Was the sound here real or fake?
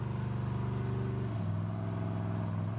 real